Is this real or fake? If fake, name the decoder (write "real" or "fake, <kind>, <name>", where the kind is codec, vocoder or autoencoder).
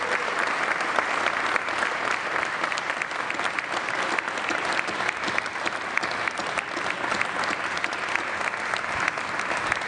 real